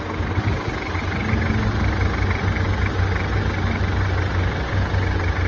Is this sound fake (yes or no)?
no